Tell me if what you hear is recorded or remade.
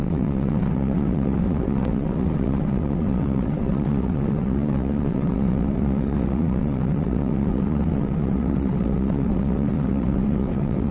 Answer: remade